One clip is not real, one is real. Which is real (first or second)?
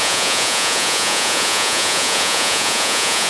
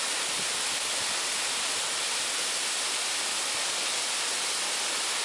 second